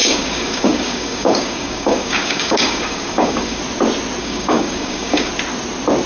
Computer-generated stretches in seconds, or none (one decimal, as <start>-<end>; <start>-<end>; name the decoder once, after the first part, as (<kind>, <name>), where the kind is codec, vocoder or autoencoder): 0.0-3.6 (codec, DAC); 4.2-5.3